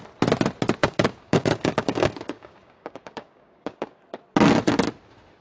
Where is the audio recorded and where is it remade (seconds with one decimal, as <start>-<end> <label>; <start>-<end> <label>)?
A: 0.0-0.8 recorded; 0.8-4.0 remade; 4.0-5.4 recorded